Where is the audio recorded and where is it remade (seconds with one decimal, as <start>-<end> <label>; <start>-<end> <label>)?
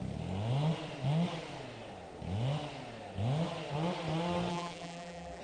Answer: 0.0-4.5 recorded; 4.5-5.4 remade